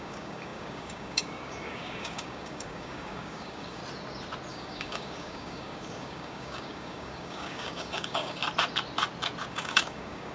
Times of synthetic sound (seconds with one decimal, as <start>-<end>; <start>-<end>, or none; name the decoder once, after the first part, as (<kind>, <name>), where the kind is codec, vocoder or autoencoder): 0.0-3.8 (codec, DAC); 4.5-8.4; 9.5-10.3